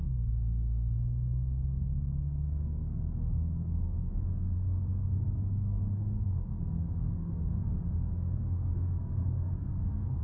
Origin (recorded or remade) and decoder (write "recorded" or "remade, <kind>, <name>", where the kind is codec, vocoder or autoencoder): remade, codec, SNAC